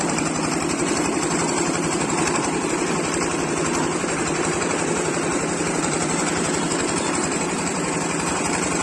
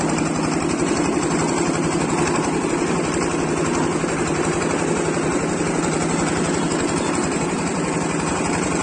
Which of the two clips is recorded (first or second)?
second